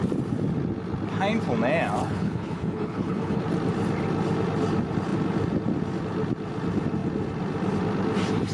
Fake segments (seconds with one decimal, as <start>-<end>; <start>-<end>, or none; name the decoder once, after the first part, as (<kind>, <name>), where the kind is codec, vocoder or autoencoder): 2.0-3.4 (codec, HILCodec)